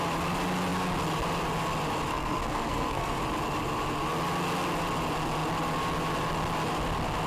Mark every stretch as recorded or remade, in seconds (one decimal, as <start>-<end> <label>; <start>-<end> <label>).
0.0-2.1 recorded; 2.1-3.2 remade; 3.2-7.3 recorded